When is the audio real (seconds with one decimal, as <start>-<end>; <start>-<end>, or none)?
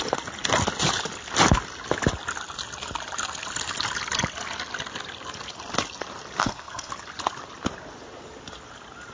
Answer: 0.0-6.4; 6.9-9.1